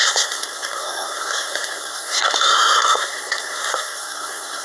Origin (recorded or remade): remade